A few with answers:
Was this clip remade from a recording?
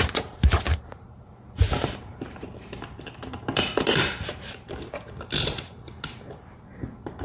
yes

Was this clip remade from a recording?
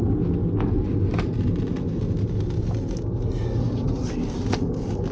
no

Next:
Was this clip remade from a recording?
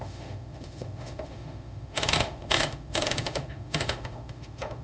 yes